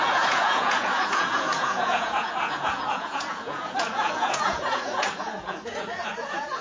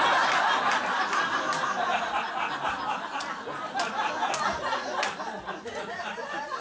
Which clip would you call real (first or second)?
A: second